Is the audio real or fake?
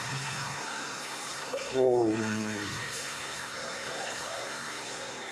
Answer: fake